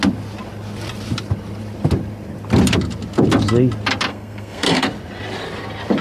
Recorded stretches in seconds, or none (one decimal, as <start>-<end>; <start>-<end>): 0.0-4.1; 4.9-6.0